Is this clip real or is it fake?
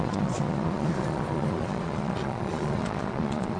fake